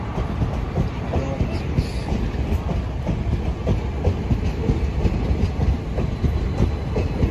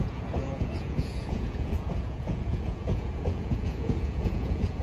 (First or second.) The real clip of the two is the first